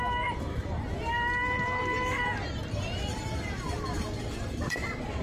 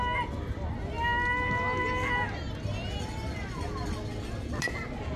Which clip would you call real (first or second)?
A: second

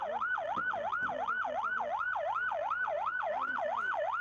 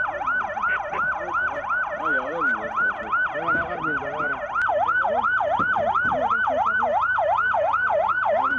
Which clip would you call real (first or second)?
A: second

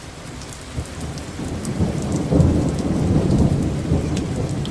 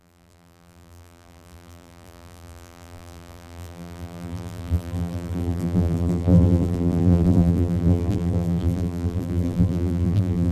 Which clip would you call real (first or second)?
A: first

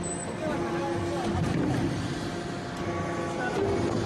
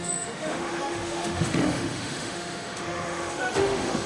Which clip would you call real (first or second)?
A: first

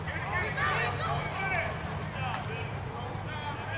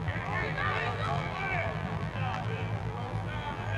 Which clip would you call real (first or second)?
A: first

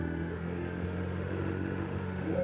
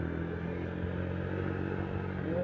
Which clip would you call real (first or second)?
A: second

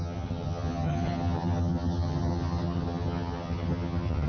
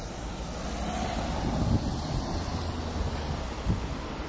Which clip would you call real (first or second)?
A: second